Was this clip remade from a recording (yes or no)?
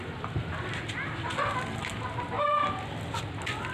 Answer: no